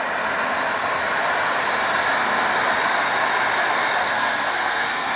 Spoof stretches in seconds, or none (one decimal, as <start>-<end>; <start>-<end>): 4.0-5.2